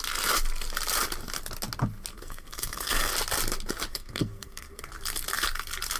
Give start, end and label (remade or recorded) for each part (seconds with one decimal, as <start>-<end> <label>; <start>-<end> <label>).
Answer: 0.0-2.1 recorded; 2.1-3.1 remade; 3.1-3.9 recorded; 3.9-4.8 remade; 4.8-6.0 recorded